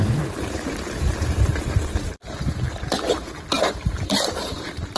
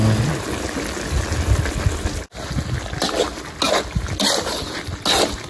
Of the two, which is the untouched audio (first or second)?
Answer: second